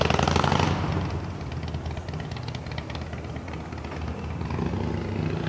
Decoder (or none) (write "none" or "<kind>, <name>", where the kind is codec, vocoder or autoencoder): none